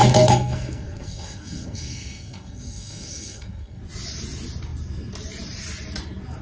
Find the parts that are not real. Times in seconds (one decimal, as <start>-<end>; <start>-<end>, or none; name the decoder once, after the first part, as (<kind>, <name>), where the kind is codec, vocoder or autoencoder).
0.0-3.8 (codec, SNAC)